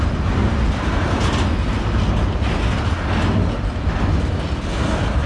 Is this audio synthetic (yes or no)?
no